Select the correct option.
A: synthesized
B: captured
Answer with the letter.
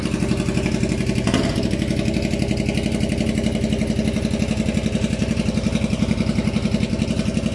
B